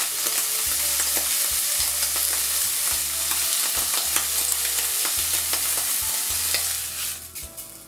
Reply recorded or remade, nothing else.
recorded